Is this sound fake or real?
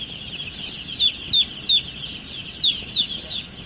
real